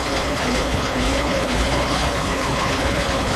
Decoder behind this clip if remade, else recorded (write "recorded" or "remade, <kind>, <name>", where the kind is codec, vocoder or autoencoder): remade, codec, HILCodec